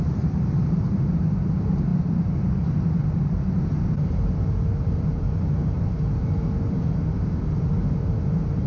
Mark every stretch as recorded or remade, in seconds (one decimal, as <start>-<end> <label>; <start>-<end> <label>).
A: 0.0-8.7 remade